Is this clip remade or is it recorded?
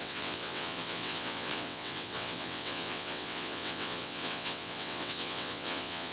remade